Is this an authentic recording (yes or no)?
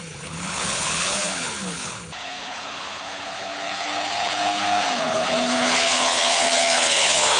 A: no